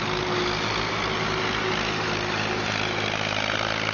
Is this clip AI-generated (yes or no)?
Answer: no